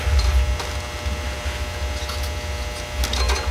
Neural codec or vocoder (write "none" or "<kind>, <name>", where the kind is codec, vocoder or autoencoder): none